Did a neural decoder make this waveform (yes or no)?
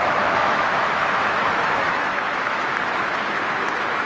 yes